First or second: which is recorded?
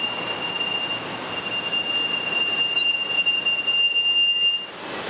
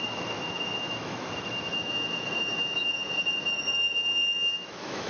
first